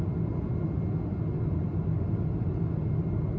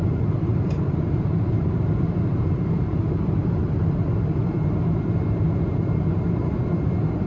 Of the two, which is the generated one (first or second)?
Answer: second